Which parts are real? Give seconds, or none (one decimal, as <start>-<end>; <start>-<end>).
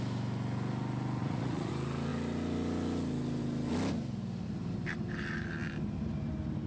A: 0.0-1.2; 1.7-6.7